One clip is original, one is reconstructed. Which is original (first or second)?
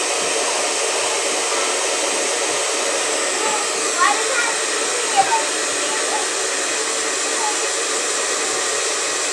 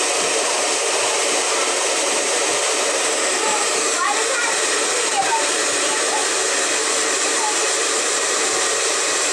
first